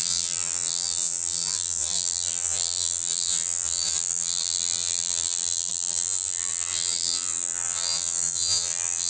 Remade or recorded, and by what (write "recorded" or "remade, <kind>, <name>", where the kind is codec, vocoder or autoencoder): remade, vocoder, BigVGAN v2